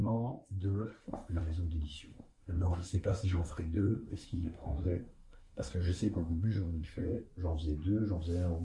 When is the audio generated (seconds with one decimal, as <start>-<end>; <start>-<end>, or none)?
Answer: 0.0-1.4; 2.1-7.3